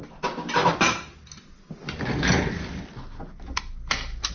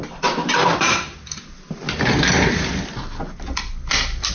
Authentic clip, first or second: first